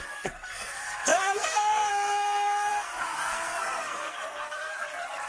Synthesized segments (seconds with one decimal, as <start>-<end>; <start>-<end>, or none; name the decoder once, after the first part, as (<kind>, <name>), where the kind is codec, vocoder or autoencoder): 0.0-5.3 (codec, SNAC)